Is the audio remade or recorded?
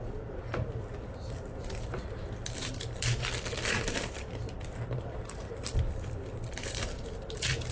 remade